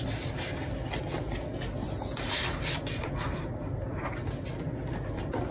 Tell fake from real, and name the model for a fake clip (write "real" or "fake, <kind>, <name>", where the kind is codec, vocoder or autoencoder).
real